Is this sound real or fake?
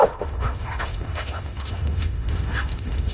fake